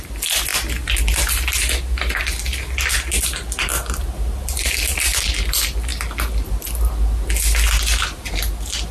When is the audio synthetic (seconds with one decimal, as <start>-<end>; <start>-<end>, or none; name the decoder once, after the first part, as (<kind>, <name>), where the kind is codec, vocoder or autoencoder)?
none